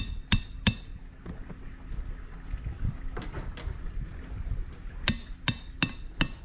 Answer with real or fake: real